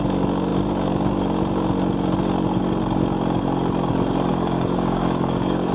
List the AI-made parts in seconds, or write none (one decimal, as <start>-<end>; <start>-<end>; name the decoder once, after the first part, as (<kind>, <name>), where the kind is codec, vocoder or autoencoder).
4.3-5.7 (codec, DAC)

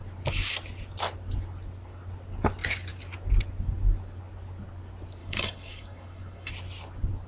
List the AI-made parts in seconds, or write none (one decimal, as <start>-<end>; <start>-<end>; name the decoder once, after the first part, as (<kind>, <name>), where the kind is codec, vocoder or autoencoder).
5.2-6.5 (codec, DAC)

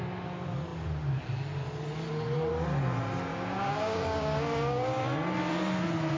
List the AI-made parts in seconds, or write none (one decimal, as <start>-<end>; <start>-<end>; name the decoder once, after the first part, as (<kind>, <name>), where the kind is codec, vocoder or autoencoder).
3.3-5.0 (codec, DAC)

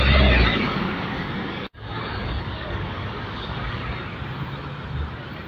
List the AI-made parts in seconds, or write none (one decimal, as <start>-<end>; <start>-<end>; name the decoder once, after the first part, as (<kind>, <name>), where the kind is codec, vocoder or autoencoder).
0.5-3.8 (codec, DAC)

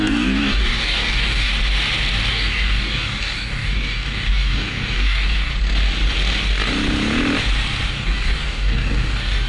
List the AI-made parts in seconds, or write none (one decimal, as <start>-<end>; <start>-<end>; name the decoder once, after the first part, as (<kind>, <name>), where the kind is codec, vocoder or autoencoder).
0.0-1.5 (codec, DAC); 2.3-5.5; 7.9-9.5

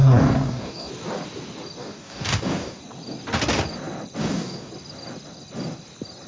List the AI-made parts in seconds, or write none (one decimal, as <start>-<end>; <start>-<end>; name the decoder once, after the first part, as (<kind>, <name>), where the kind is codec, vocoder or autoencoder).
0.0-0.9 (codec, DAC); 1.8-2.8; 4.2-4.7

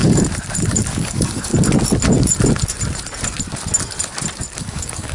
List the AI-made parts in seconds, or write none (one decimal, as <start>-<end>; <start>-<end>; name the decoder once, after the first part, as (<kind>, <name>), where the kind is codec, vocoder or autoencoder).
0.7-1.5 (codec, DAC); 4.6-5.1